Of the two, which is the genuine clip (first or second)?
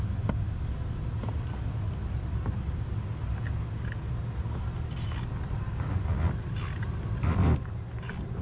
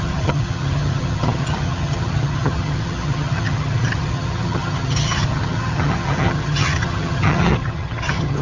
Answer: first